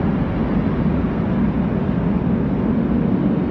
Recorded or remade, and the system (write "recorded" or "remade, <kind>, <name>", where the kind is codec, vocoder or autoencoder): recorded